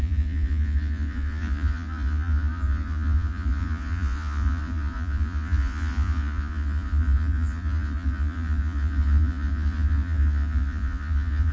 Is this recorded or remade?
remade